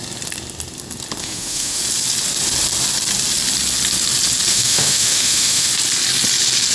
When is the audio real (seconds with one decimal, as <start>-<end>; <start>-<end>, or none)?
0.0-1.2; 1.8-4.5; 5.7-6.7